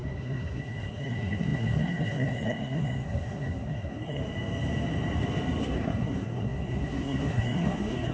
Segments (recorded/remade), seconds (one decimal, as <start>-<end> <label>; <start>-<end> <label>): 0.0-4.2 remade; 4.2-5.6 recorded; 5.6-8.1 remade